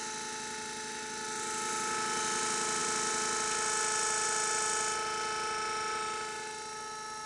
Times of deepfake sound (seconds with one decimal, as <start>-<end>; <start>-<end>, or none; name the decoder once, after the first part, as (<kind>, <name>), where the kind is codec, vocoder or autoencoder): none